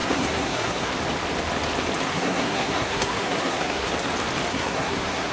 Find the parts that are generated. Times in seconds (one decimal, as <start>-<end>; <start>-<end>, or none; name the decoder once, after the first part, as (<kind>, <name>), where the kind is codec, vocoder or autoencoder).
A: 0.0-0.9 (codec, SNAC); 2.1-3.9; 4.5-5.3